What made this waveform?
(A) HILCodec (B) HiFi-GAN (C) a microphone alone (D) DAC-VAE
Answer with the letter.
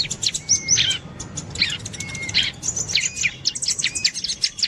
C